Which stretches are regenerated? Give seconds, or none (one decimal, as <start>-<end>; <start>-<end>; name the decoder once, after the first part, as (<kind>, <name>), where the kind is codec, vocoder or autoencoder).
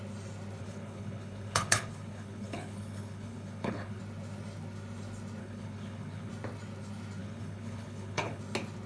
0.6-4.0 (codec, HILCodec); 5.4-6.3; 7.2-8.4